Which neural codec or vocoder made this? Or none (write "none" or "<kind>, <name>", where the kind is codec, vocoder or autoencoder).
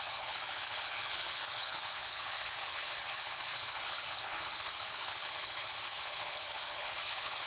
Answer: codec, HILCodec